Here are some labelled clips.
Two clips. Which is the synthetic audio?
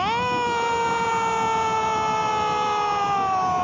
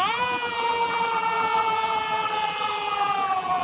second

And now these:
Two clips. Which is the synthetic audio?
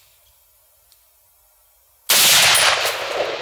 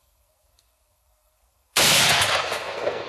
second